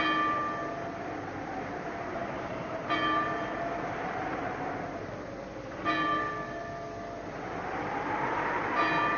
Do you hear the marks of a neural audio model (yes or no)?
no